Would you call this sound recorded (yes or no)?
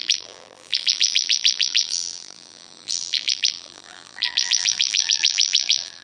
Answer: no